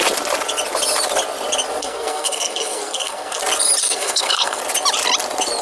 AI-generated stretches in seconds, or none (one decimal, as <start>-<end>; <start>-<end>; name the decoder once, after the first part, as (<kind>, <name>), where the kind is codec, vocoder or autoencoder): 1.8-3.4 (codec, SNAC); 3.8-4.6